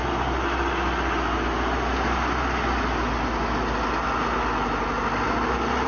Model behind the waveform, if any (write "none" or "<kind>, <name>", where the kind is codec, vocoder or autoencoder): none